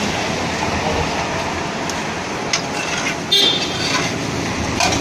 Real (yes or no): yes